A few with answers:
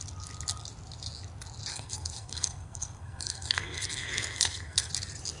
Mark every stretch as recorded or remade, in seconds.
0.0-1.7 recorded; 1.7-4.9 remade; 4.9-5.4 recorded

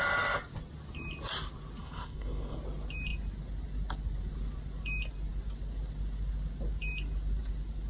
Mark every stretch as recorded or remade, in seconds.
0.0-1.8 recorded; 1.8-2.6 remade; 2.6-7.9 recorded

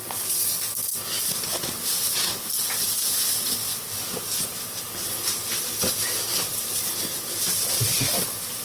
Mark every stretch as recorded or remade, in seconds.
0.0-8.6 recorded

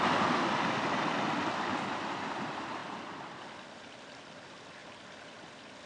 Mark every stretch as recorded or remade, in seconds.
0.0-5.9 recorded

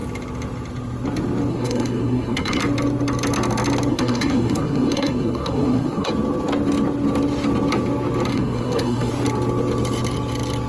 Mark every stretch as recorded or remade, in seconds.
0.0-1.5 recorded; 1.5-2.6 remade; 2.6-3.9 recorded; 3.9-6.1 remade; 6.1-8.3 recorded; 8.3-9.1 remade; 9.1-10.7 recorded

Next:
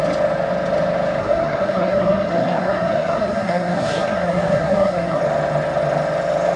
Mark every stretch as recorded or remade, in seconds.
0.0-1.2 recorded; 1.2-5.2 remade; 5.2-6.6 recorded

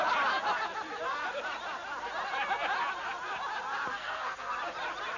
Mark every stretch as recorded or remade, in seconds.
0.0-3.9 recorded; 3.9-4.5 remade; 4.5-5.2 recorded